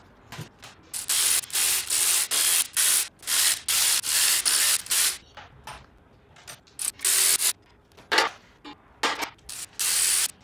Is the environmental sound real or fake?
real